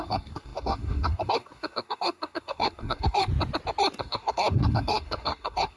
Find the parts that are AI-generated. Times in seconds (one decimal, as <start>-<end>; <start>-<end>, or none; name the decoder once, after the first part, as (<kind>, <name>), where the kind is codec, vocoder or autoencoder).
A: 0.0-3.3 (codec, SNAC); 4.0-5.8